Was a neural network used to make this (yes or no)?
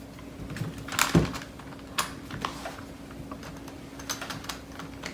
no